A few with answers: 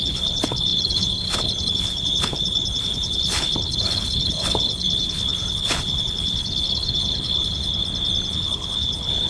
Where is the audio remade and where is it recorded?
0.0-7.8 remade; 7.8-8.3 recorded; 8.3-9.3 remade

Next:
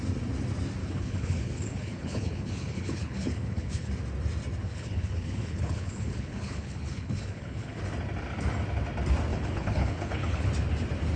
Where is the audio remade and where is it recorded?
0.0-0.8 recorded; 0.8-3.9 remade; 3.9-4.6 recorded; 4.6-7.8 remade; 7.8-9.3 recorded; 9.3-10.5 remade; 10.5-11.2 recorded

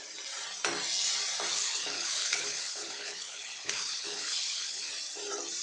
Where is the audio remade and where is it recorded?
0.0-1.5 recorded; 1.5-4.9 remade; 4.9-5.6 recorded

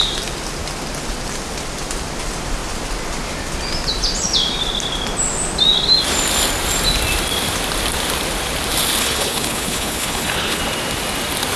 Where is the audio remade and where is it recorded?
0.0-9.0 recorded; 9.0-10.6 remade; 10.6-11.6 recorded

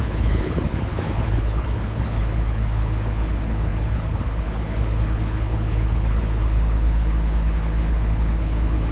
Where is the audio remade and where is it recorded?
0.0-8.9 remade

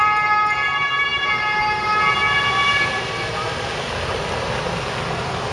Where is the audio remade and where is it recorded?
0.0-5.5 recorded